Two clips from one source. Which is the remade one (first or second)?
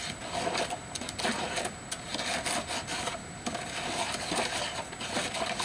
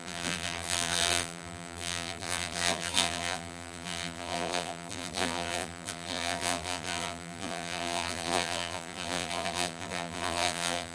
second